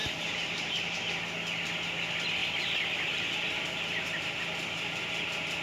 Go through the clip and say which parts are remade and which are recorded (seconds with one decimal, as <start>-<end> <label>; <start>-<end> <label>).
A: 0.0-1.0 remade; 1.0-5.6 recorded